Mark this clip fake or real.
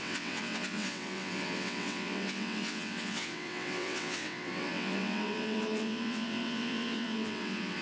fake